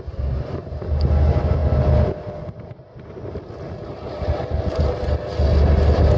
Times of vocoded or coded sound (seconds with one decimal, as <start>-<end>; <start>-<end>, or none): none